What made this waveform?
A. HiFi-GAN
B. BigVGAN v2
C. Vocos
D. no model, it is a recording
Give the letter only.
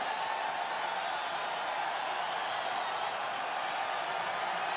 D